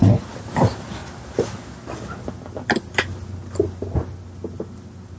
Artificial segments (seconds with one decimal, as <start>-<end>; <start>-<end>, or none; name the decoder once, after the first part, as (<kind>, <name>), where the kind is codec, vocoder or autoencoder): none